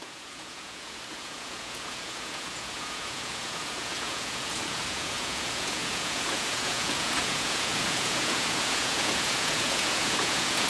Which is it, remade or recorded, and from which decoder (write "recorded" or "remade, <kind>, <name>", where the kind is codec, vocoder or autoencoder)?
remade, vocoder, Vocos